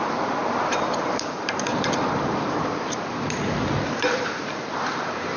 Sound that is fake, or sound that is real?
fake